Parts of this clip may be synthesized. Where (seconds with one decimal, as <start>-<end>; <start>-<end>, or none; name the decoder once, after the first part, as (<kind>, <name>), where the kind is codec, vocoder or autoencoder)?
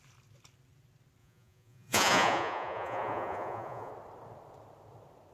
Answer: 1.2-3.9 (vocoder, Vocos)